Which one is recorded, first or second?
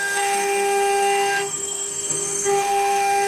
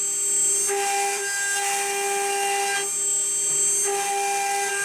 second